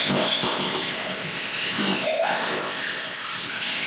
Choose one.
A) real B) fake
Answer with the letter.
B